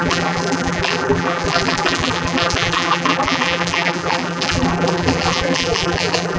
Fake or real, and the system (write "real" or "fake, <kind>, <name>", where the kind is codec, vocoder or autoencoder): fake, vocoder, BigVGAN v2